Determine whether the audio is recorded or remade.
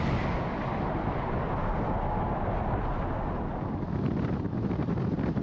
recorded